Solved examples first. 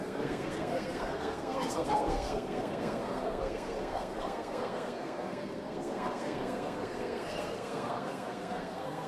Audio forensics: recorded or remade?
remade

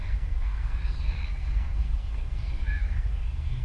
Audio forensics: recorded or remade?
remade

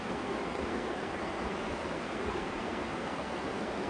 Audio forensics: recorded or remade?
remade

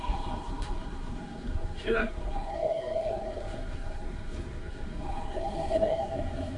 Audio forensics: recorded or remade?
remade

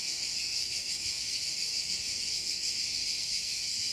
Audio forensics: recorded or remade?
remade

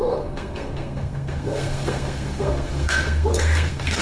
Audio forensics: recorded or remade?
remade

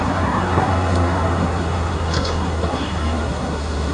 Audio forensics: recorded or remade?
remade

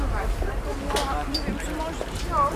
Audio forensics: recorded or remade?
recorded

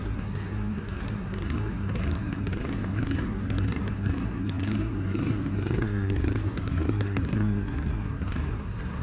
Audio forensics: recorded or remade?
remade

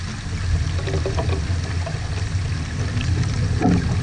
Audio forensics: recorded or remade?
recorded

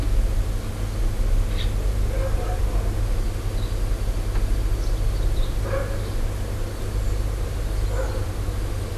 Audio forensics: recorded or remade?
recorded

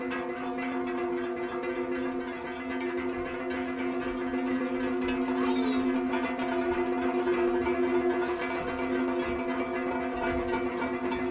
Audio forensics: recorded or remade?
recorded